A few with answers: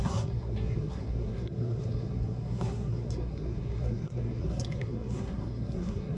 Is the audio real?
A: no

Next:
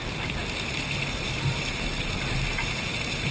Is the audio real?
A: yes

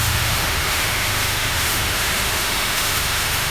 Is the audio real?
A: no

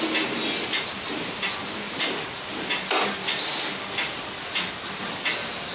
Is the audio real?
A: yes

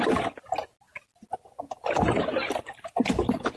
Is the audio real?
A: yes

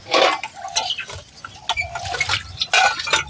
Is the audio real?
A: yes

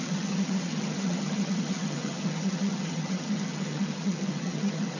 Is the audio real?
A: no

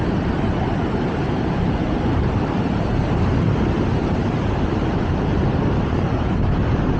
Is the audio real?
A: no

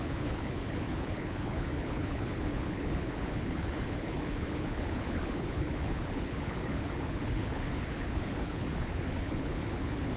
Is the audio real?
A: no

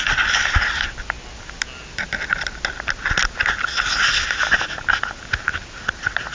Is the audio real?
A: yes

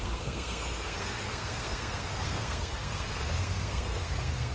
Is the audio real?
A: no